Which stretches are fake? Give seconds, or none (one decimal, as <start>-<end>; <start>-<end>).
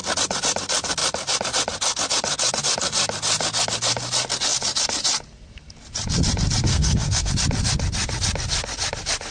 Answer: 6.7-7.3